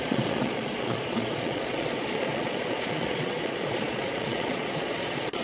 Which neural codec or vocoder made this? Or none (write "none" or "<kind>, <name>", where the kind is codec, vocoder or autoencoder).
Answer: vocoder, Vocos